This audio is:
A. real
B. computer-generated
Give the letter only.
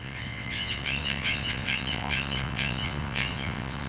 B